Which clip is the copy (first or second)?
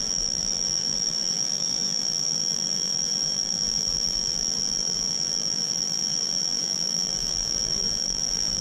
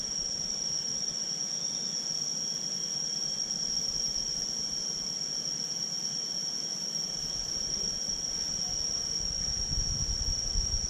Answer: first